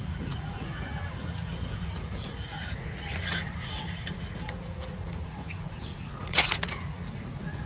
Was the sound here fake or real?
fake